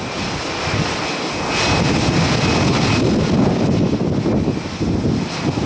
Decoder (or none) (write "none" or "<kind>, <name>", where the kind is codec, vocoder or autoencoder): none